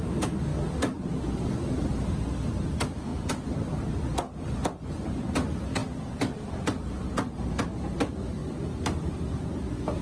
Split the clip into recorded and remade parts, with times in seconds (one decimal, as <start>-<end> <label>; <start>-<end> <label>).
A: 0.0-10.0 recorded